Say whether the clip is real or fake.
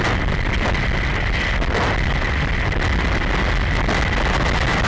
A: real